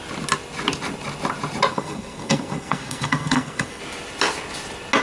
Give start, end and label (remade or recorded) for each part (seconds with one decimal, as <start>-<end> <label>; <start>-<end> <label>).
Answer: 0.0-1.7 recorded; 1.7-3.8 remade; 3.8-5.0 recorded